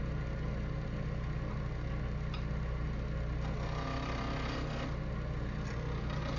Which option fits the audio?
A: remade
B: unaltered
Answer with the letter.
B